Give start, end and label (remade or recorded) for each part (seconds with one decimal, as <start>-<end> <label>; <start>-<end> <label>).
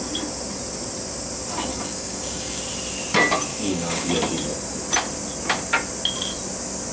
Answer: 0.0-1.7 recorded; 1.7-2.6 remade; 2.6-3.5 recorded; 3.5-4.1 remade; 4.1-6.9 recorded